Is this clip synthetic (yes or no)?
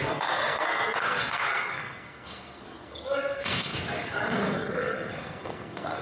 yes